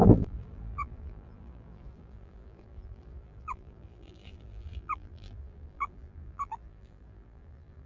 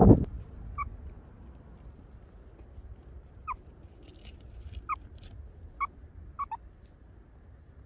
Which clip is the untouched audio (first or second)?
second